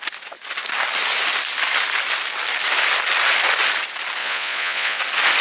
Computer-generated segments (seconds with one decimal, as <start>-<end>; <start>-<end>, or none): 4.2-5.0